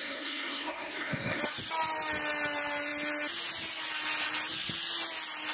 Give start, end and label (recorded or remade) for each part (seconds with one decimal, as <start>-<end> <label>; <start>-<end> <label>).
0.0-1.4 remade; 1.4-5.5 recorded